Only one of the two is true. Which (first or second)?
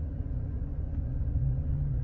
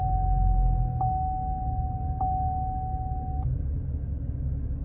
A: second